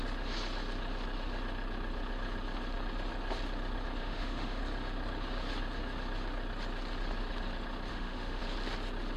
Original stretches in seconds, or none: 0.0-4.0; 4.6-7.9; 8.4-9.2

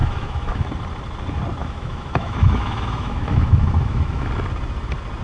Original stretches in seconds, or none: 0.7-1.6; 4.3-5.2

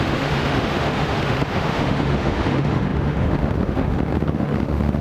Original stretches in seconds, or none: none

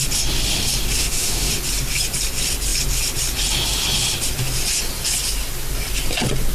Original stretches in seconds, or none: 0.0-1.0; 1.5-6.5

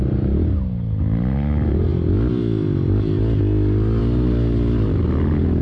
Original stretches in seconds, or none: 0.0-5.6

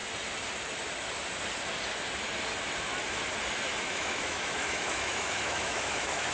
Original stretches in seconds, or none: 0.0-3.8

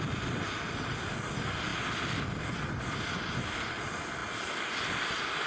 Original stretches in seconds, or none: 0.0-5.5